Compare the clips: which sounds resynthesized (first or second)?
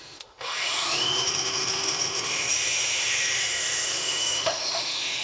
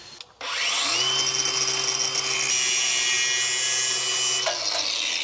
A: first